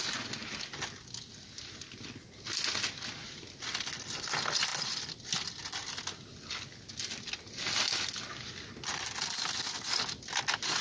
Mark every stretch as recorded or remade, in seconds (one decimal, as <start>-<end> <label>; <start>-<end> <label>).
0.0-4.7 recorded; 4.7-5.6 remade; 5.6-10.8 recorded